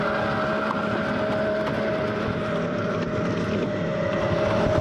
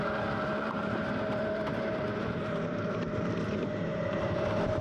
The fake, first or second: second